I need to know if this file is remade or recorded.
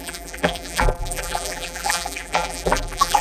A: remade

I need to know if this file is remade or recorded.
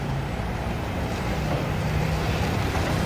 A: remade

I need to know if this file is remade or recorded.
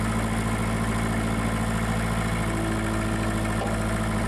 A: recorded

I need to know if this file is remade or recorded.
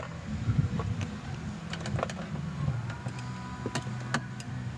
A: recorded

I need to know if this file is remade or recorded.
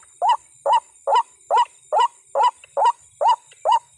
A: remade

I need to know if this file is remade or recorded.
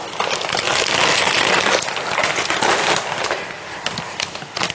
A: recorded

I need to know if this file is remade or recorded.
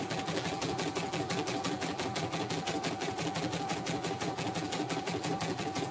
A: remade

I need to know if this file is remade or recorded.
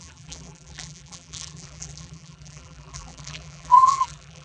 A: remade